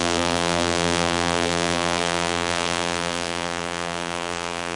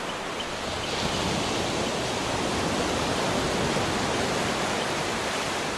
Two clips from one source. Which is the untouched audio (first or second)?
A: second